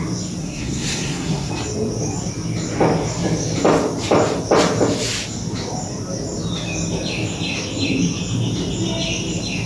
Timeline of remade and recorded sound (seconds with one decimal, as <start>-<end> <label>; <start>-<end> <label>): 0.0-0.4 recorded; 0.4-1.5 remade; 1.5-9.7 recorded

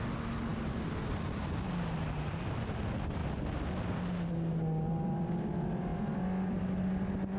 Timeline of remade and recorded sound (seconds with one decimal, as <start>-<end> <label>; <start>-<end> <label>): 0.0-7.4 recorded

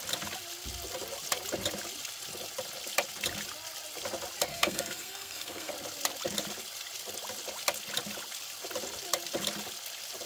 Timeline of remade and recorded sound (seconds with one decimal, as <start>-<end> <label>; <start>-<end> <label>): 0.0-4.5 recorded; 4.5-5.7 remade; 5.7-10.3 recorded

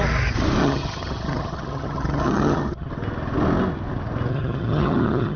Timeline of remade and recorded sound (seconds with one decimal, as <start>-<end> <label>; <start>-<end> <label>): 0.0-0.6 recorded; 0.6-2.9 remade; 2.9-4.3 recorded; 4.3-5.4 remade

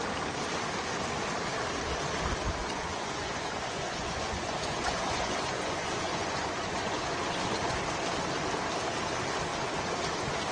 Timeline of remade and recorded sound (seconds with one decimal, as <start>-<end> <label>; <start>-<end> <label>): 0.0-2.6 recorded; 2.6-7.8 remade; 7.8-10.5 recorded

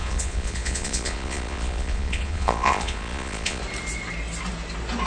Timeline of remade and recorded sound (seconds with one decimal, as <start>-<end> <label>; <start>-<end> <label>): 0.0-3.6 remade; 3.6-5.1 recorded